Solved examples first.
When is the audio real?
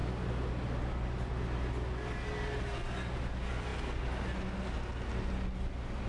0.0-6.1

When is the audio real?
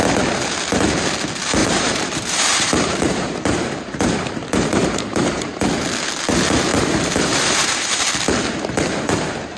0.0-1.6; 5.6-6.7; 8.1-9.6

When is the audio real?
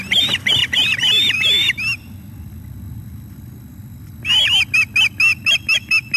0.0-6.2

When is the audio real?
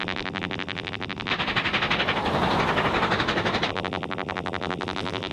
1.3-3.7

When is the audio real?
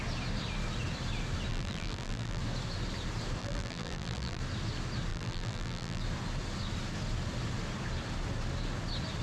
0.0-1.5; 2.4-3.4; 4.4-5.1; 6.0-9.2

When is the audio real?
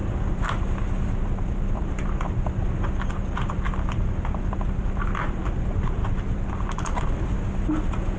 0.0-6.0; 7.4-8.2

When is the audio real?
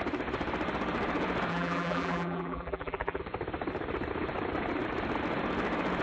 0.0-1.5; 3.2-6.0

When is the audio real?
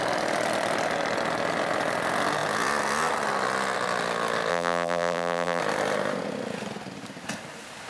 0.0-4.5; 5.6-7.9